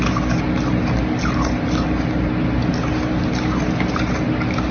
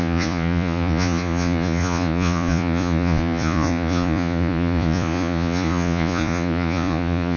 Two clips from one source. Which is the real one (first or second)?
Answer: first